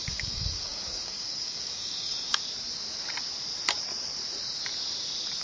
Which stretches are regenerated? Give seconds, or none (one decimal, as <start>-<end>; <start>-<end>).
0.0-2.4